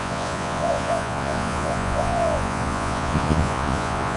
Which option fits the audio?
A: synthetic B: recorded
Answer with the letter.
A